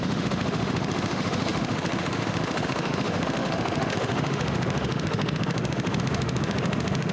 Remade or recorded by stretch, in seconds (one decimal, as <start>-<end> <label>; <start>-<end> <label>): 0.0-7.1 remade